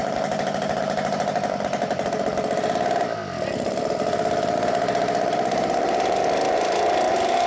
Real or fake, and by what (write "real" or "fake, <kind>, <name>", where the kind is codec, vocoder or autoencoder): real